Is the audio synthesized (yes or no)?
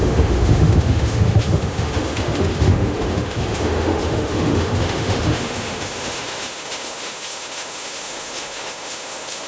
yes